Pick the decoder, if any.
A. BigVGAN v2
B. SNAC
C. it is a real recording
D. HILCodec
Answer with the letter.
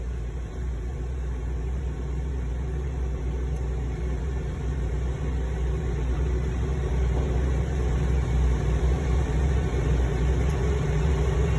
A